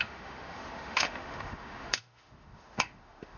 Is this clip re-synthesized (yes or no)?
yes